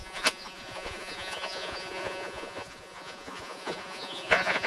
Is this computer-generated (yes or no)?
yes